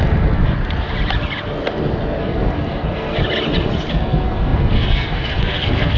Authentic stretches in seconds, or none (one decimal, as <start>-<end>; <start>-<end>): 0.4-2.2; 3.2-3.9